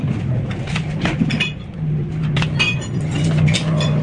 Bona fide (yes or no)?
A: yes